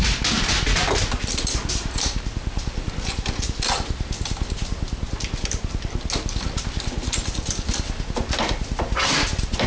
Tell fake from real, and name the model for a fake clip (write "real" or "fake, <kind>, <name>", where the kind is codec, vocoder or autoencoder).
real